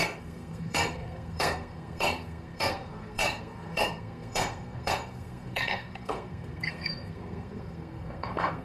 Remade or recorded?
remade